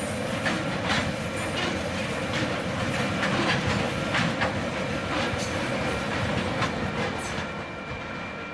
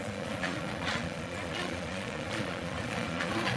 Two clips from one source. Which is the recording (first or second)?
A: first